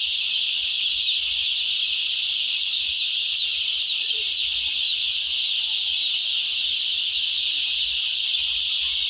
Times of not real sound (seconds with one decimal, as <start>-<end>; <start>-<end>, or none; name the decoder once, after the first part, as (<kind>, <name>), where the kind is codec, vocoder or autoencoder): 1.4-4.0 (vocoder, BigVGAN v2); 6.4-7.1

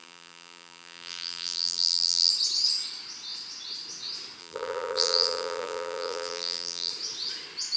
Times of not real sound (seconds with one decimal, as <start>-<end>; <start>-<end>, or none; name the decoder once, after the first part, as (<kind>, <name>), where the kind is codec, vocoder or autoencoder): 0.0-2.3 (vocoder, BigVGAN v2); 4.4-6.9

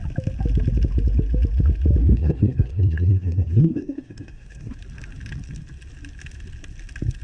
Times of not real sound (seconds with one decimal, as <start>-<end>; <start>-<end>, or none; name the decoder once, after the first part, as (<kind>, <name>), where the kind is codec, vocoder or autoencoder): 2.1-4.7 (codec, SNAC)